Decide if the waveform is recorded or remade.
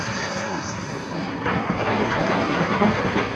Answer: remade